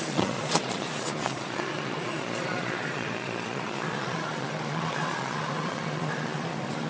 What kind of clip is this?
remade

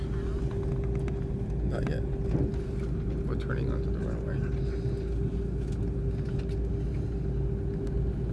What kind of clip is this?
recorded